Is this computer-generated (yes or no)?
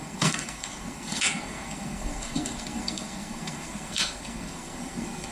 yes